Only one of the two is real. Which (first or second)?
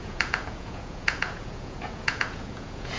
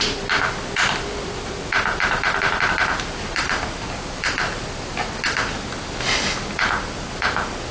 second